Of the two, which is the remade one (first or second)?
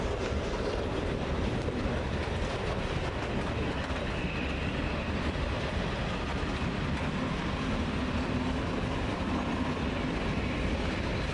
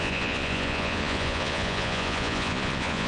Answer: second